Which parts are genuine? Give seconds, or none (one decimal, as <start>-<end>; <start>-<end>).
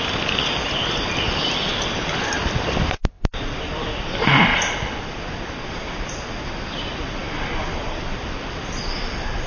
1.7-2.4; 7.2-8.0